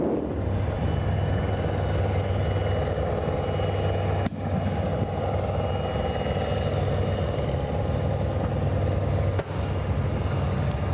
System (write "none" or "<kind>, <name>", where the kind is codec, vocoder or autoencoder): none